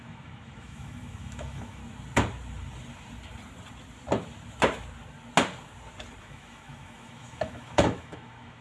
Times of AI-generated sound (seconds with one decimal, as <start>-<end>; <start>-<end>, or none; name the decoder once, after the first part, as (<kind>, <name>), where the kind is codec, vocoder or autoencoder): 0.0-1.8 (autoencoder, DAC-VAE); 6.2-8.6